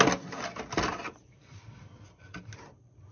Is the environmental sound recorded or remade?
recorded